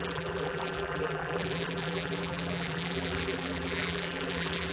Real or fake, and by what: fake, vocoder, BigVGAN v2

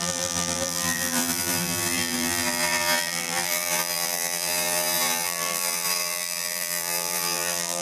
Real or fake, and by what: fake, vocoder, BigVGAN v2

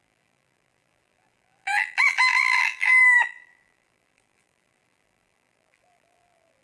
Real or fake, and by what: fake, vocoder, BigVGAN v2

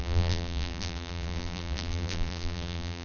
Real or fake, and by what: fake, vocoder, BigVGAN v2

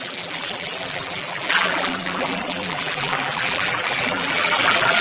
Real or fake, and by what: fake, vocoder, BigVGAN v2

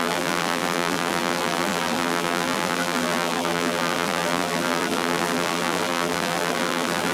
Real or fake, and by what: fake, vocoder, BigVGAN v2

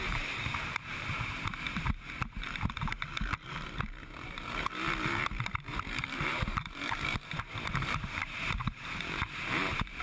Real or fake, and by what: fake, vocoder, BigVGAN v2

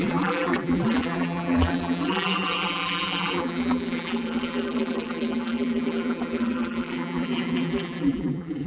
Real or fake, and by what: fake, vocoder, BigVGAN v2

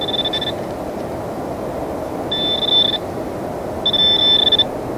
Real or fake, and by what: real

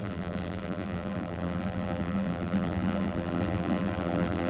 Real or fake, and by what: fake, vocoder, BigVGAN v2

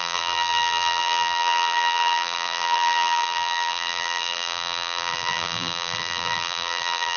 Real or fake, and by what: fake, vocoder, BigVGAN v2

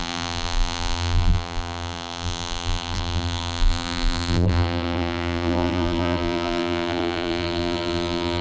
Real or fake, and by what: fake, vocoder, BigVGAN v2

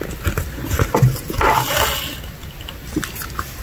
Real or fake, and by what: real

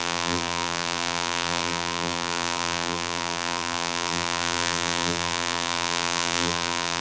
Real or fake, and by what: fake, vocoder, BigVGAN v2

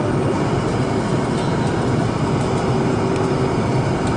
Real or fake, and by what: real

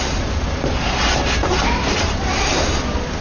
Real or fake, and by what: real